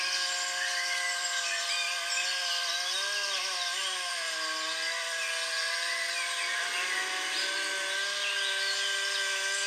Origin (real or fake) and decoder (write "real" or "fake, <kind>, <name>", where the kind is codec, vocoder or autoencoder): real